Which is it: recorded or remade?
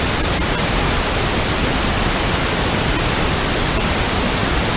recorded